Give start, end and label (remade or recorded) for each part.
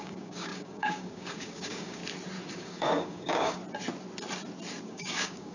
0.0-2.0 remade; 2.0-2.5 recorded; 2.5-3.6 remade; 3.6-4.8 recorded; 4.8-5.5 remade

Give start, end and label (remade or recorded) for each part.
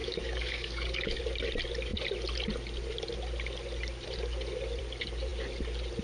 0.0-1.2 remade; 1.2-6.0 recorded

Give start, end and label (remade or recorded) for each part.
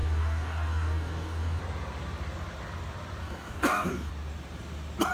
0.0-1.6 remade; 1.6-3.2 recorded; 3.2-4.1 remade; 4.1-5.1 recorded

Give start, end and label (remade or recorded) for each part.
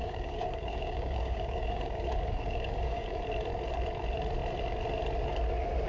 0.0-3.2 remade; 3.2-5.9 recorded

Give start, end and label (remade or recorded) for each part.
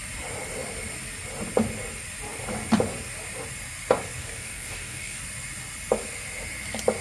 0.0-4.2 recorded; 4.2-5.2 remade; 5.2-7.0 recorded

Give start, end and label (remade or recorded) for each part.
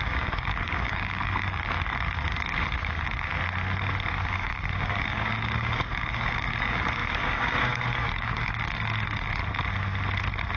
0.0-3.3 remade; 3.3-4.1 recorded; 4.1-9.4 remade; 9.4-10.6 recorded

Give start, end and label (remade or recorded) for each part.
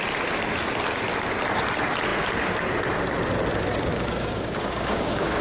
0.0-3.9 recorded; 3.9-5.4 remade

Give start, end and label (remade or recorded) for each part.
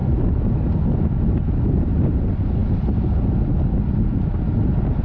0.0-5.0 recorded